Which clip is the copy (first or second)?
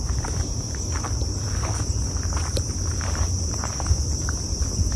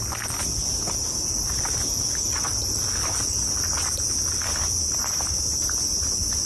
first